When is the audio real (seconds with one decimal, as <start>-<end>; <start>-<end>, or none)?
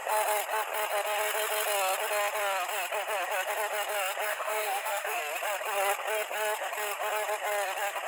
0.0-4.3; 5.2-8.1